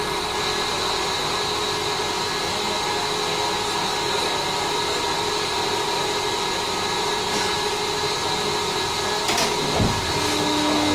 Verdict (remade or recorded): recorded